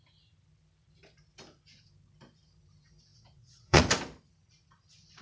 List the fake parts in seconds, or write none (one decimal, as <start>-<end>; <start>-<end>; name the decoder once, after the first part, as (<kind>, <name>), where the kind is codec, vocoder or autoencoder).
3.1-3.8 (vocoder, WaveNeXt)